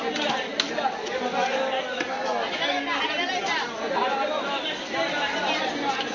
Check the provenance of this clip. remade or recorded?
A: recorded